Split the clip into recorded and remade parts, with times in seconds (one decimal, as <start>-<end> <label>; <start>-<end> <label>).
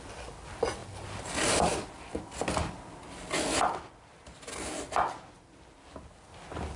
0.0-6.8 recorded